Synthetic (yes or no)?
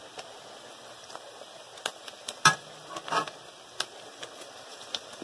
no